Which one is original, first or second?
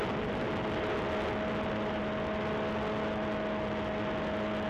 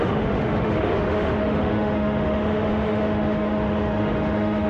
first